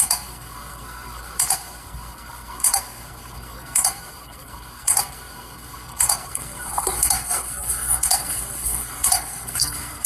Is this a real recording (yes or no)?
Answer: no